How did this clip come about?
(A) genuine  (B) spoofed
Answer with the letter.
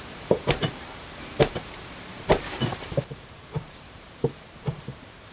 B